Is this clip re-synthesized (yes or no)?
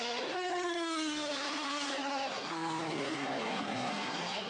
yes